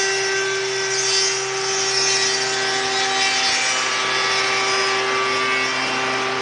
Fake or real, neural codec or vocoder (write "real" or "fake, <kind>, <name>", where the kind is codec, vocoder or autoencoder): real